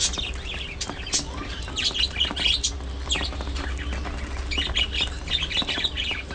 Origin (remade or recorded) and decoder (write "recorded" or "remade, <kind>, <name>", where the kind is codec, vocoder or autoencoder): recorded